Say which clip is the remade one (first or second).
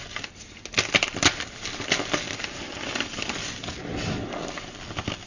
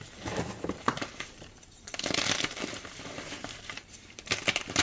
second